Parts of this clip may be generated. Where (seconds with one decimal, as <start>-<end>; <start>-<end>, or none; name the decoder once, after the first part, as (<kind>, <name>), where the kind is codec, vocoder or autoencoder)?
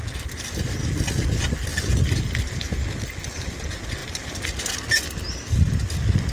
1.7-2.5 (vocoder, BigVGAN v2)